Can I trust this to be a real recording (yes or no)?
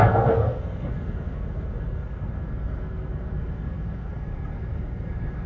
no